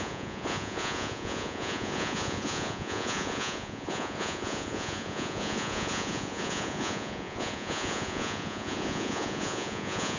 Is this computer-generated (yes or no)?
yes